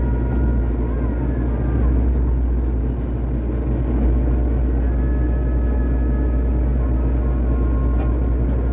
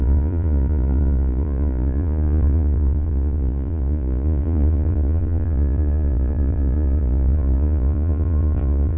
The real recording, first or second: first